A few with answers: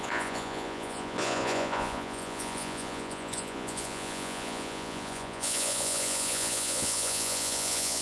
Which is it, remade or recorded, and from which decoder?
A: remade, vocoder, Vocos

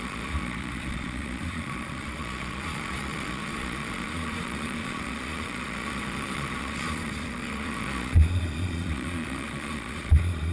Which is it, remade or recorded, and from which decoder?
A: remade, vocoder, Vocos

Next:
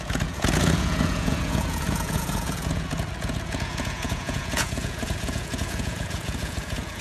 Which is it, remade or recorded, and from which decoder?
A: remade, vocoder, Vocos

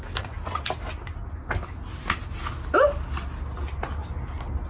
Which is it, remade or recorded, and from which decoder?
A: recorded